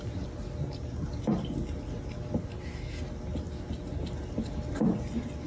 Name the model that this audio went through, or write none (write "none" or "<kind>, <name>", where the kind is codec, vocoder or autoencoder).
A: none